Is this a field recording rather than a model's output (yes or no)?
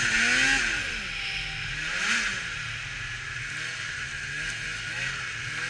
yes